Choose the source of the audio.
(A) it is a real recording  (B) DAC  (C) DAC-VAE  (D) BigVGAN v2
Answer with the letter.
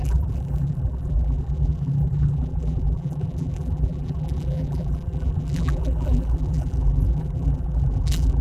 D